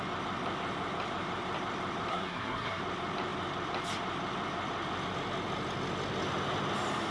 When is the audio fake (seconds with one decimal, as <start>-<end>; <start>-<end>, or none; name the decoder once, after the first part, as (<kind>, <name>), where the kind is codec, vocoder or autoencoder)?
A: 2.1-2.8 (codec, SNAC)